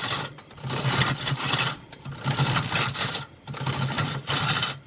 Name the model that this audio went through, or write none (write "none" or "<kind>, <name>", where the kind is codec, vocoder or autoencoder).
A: none